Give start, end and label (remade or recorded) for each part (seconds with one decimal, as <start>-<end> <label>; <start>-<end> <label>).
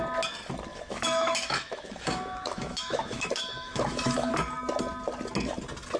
0.0-0.7 recorded; 0.7-4.3 remade; 4.3-6.0 recorded